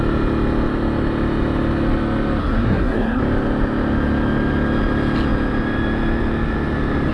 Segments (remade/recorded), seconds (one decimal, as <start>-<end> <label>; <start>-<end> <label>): 0.0-2.4 recorded; 2.4-3.2 remade; 3.2-7.1 recorded